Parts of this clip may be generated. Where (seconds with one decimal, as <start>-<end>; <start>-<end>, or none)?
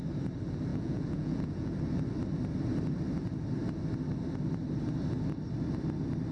0.7-1.7